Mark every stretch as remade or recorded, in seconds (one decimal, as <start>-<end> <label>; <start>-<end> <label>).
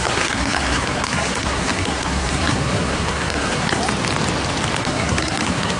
0.0-3.8 remade; 3.8-4.8 recorded; 4.8-5.8 remade